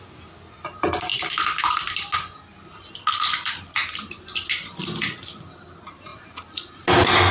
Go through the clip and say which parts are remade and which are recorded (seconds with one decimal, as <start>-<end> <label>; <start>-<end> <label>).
0.0-7.3 recorded